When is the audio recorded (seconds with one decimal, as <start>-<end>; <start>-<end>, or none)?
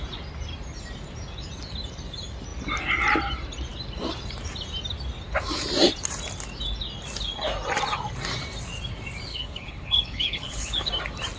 0.0-9.3; 10.9-11.4